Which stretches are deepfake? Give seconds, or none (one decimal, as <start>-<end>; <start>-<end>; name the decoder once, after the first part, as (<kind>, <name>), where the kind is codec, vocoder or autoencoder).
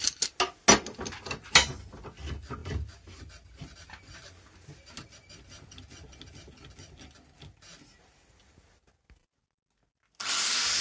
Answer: none